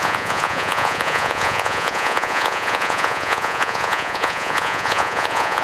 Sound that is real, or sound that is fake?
fake